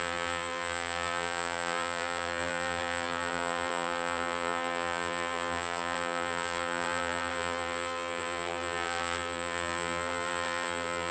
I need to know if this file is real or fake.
fake